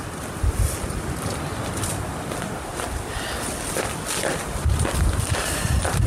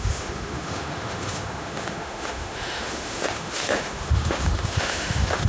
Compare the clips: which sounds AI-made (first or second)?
second